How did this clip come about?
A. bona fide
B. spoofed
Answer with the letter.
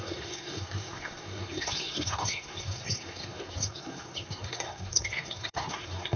B